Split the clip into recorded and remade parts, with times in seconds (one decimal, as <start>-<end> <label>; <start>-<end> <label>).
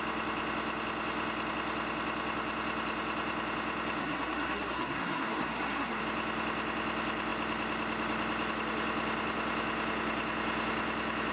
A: 0.0-4.0 recorded; 4.0-6.0 remade; 6.0-11.3 recorded